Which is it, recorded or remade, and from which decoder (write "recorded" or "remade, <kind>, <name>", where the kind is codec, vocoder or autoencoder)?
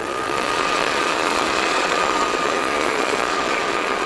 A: remade, vocoder, Vocos